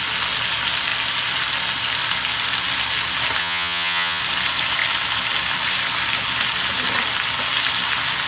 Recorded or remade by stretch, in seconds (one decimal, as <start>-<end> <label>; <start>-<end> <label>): 0.0-3.4 recorded; 3.4-4.2 remade; 4.2-8.3 recorded